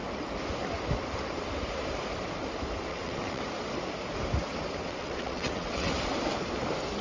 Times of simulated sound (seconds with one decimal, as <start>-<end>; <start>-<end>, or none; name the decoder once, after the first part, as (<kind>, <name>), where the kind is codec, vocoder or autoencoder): 2.9-3.4 (vocoder, WaveNeXt); 4.9-5.9